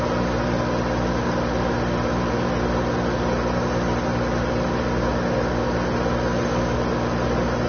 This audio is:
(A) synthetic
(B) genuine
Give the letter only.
B